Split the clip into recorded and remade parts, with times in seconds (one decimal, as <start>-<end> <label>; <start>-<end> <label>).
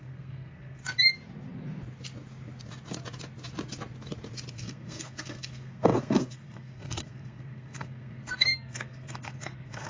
0.0-0.8 remade; 0.8-4.5 recorded; 4.5-9.9 remade